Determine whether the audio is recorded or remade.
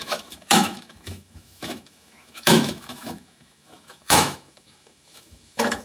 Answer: remade